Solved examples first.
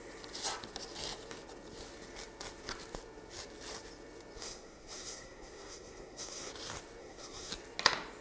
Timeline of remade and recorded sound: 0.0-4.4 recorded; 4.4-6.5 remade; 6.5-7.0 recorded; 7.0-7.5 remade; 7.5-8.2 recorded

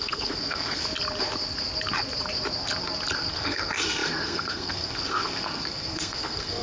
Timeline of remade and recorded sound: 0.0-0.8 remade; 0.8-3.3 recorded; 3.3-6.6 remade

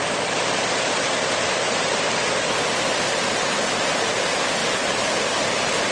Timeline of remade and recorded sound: 0.0-5.9 recorded

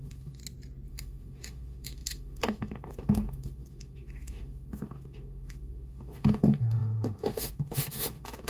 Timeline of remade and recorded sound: 0.0-0.4 remade; 0.4-0.9 recorded; 0.9-8.5 remade

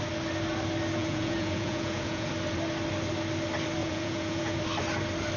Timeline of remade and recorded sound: 0.0-1.0 recorded; 1.0-2.3 remade; 2.3-3.8 recorded; 3.8-4.6 remade; 4.6-5.4 recorded